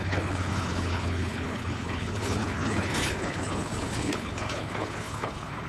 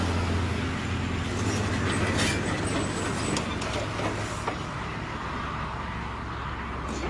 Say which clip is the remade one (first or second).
first